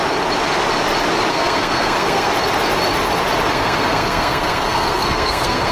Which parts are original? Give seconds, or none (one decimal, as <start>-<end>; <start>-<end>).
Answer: 0.0-1.3; 2.3-3.5